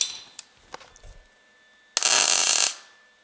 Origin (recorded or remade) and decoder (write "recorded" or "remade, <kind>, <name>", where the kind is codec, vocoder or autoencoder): recorded